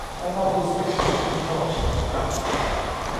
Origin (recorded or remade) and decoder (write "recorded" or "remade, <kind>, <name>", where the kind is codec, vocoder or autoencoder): recorded